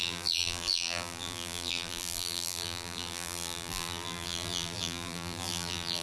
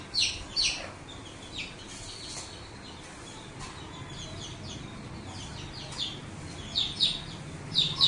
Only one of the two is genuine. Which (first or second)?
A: second